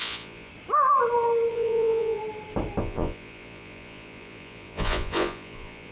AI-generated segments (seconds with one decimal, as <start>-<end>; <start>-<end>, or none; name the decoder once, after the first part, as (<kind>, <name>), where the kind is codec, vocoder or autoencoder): 0.0-0.5 (vocoder, Vocos); 1.5-2.2; 2.8-5.9